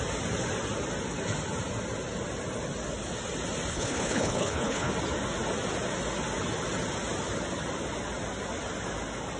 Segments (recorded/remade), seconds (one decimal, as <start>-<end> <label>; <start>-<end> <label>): 0.0-3.7 recorded; 3.7-4.9 remade; 4.9-9.4 recorded